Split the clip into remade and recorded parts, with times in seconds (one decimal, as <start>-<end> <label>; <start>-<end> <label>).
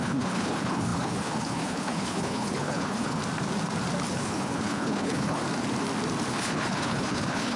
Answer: 0.0-3.2 remade; 3.2-4.1 recorded; 4.1-5.4 remade; 5.4-6.3 recorded; 6.3-7.6 remade